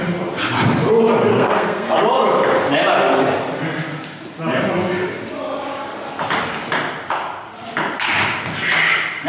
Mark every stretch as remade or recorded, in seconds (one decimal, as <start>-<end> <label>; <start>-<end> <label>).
0.0-1.3 recorded; 1.3-2.0 remade; 2.0-9.3 recorded